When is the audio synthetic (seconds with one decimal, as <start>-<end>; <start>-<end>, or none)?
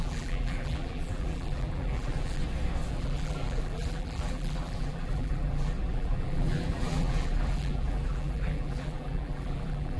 0.0-2.4; 2.9-10.0